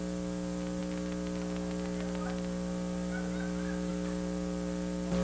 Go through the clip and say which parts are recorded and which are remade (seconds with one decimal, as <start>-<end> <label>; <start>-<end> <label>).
0.0-5.2 recorded